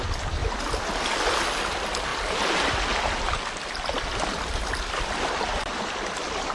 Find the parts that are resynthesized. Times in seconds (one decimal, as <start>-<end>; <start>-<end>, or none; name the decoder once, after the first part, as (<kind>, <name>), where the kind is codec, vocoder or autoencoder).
none